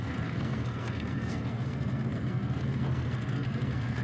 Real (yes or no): no